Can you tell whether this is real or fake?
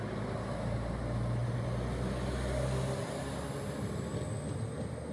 real